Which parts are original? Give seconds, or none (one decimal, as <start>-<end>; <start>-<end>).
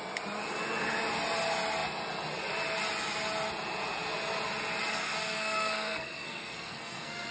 0.0-4.9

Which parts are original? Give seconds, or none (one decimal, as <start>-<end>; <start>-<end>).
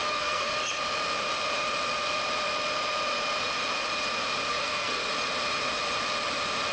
0.5-4.5; 5.1-6.7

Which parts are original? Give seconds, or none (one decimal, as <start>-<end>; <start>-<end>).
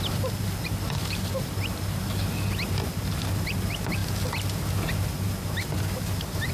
0.0-6.5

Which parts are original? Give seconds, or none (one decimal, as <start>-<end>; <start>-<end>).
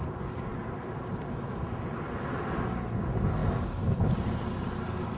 0.0-5.2